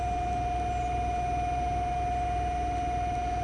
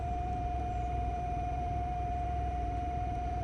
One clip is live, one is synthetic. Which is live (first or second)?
first